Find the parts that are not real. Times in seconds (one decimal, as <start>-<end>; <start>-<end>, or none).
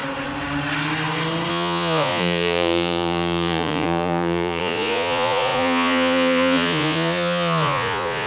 1.5-8.3